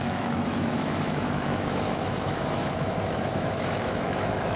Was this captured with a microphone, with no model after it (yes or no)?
no